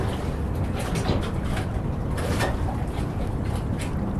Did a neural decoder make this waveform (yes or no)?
no